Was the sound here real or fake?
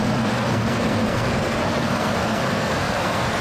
fake